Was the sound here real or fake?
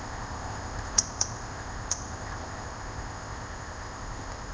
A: fake